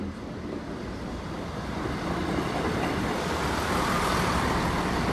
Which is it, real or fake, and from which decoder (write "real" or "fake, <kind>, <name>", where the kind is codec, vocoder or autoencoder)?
real